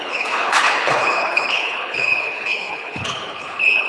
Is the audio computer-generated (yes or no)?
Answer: yes